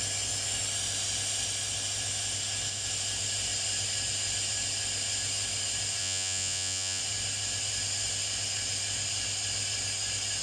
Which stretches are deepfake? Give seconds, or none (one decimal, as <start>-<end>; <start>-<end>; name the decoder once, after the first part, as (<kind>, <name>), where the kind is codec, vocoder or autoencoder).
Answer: 6.0-7.0 (vocoder, Vocos)